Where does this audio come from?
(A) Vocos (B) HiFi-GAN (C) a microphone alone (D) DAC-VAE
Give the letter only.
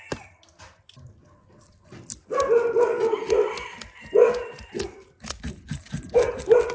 C